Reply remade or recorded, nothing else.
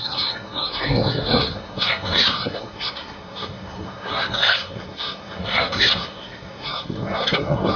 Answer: remade